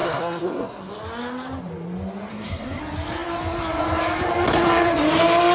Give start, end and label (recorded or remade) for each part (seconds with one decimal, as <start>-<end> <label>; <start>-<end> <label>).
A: 0.0-0.9 remade; 0.9-2.3 recorded; 2.3-2.8 remade; 2.8-5.5 recorded